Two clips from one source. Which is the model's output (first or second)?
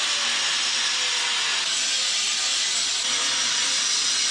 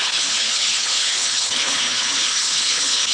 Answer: second